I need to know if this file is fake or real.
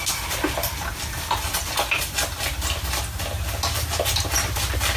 real